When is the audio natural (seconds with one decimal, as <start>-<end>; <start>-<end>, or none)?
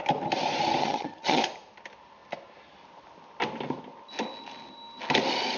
0.0-0.8; 1.4-5.6